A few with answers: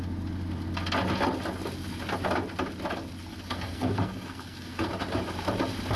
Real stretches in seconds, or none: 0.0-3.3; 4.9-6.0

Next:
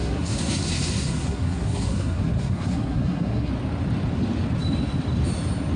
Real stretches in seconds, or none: 3.5-5.8

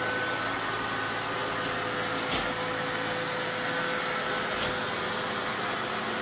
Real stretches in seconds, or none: 0.0-6.2

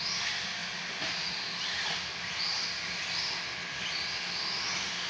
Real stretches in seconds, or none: 0.0-5.1

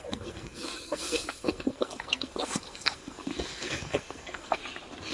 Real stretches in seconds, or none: 4.6-5.1

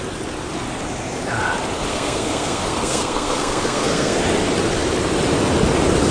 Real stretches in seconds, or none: 0.0-1.9; 4.2-6.1